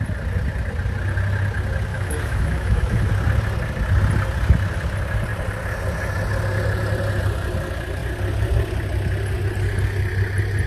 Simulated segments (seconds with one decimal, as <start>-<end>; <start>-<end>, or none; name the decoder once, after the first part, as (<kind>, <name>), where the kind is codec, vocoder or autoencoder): 1.9-3.1 (autoencoder, DAC-VAE)